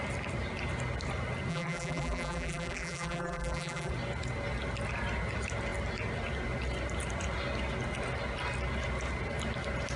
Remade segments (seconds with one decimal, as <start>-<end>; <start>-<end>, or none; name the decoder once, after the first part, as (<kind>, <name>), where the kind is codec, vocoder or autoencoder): 1.5-3.9 (vocoder, BigVGAN v2)